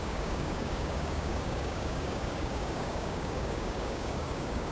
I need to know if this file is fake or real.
fake